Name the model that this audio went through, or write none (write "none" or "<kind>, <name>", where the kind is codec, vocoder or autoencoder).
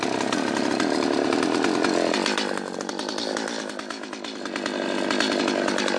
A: none